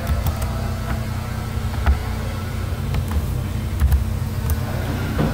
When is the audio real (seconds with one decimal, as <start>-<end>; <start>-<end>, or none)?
0.0-5.3